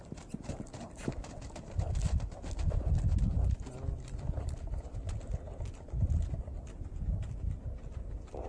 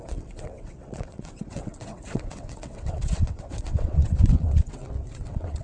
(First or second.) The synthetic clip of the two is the second